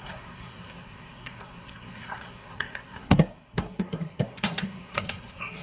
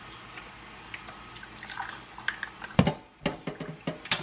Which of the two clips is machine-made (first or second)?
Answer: first